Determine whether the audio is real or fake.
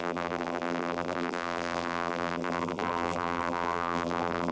fake